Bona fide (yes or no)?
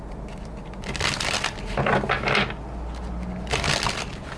yes